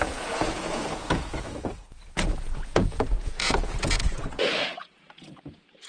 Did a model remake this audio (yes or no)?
yes